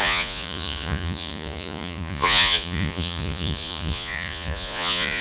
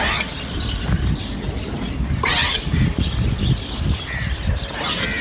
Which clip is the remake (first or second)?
first